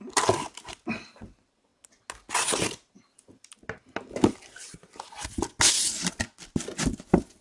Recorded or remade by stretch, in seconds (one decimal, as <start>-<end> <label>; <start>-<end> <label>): 0.0-1.7 remade; 1.7-6.1 recorded; 6.1-7.4 remade